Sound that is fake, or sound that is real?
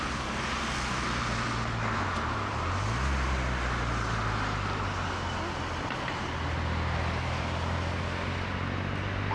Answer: real